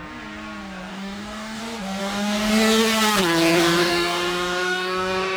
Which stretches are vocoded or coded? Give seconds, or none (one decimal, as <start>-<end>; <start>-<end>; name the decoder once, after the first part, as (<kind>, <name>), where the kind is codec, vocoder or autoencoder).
0.9-1.6 (codec, DAC); 2.0-2.5; 3.8-5.4